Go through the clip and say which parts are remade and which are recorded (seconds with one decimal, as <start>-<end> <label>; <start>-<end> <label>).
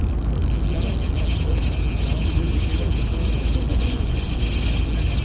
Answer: 0.0-3.7 recorded; 3.7-4.3 remade; 4.3-5.2 recorded